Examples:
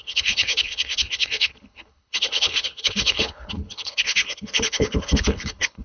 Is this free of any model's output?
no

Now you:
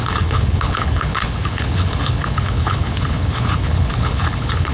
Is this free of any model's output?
no